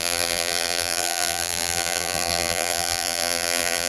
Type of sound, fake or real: fake